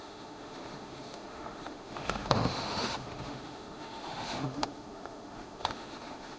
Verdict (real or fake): fake